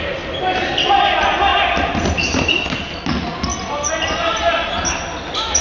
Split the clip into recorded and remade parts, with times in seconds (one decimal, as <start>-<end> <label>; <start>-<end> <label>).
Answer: 0.0-5.6 recorded